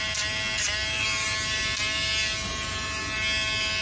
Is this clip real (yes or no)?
yes